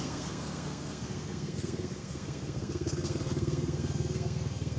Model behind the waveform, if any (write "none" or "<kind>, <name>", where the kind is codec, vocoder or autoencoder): codec, SNAC